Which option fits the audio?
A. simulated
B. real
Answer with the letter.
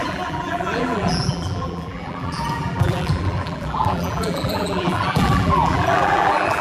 A